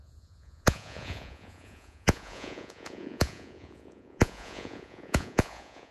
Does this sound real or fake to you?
fake